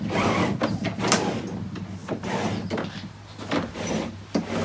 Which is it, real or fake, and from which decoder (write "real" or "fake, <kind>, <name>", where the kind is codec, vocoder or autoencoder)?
real